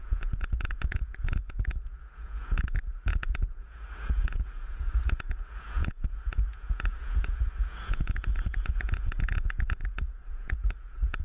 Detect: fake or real fake